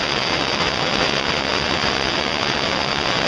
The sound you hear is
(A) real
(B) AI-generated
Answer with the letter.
B